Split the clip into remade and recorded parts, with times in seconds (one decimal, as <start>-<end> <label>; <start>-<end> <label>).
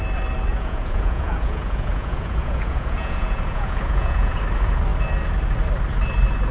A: 0.0-0.5 recorded; 0.5-4.4 remade; 4.4-6.5 recorded